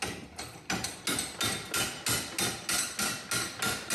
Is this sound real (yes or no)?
yes